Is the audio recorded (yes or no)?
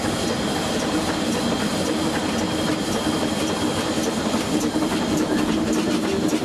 yes